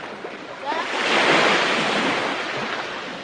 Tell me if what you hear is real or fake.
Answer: real